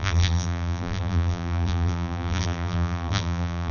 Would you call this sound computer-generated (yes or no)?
yes